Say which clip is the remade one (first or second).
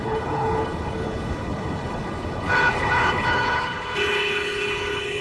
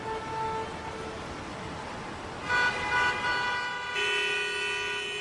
first